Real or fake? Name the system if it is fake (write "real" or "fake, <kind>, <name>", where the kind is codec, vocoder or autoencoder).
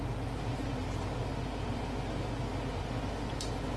real